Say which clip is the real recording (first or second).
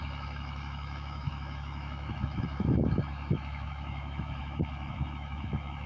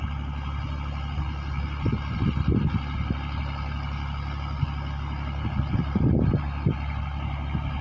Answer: second